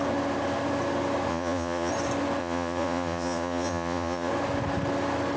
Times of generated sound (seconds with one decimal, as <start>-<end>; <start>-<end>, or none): 1.3-1.9; 2.4-4.3